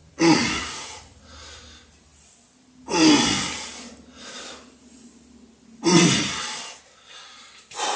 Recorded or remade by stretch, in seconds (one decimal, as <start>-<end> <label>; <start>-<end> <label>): 0.0-1.0 remade; 1.0-8.0 recorded